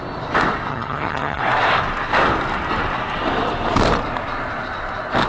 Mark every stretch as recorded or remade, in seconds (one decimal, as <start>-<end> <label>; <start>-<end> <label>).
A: 0.0-0.7 recorded; 0.7-1.4 remade; 1.4-5.3 recorded